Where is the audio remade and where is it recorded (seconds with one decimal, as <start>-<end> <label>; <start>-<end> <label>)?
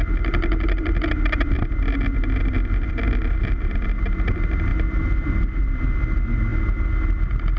0.0-7.6 recorded